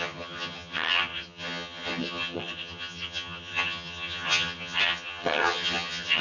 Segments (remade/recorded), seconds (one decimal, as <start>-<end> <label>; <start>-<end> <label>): 0.0-6.2 remade